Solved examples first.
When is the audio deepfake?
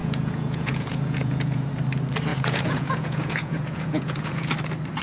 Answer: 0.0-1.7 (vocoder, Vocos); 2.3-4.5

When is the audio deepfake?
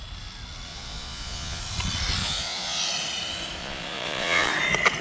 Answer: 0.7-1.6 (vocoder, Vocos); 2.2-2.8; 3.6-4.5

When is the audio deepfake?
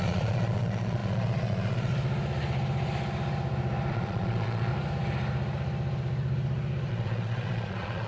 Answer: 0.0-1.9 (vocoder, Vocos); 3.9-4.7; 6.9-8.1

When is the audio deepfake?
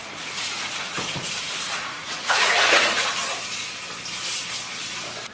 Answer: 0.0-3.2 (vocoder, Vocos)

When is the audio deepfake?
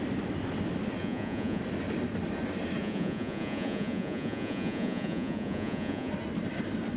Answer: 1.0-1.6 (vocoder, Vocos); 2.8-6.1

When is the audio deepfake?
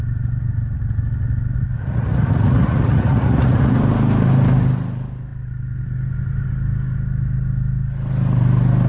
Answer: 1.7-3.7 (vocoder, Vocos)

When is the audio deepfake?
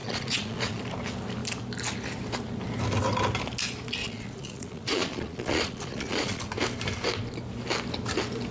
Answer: 0.0-0.8 (vocoder, Vocos); 4.0-6.4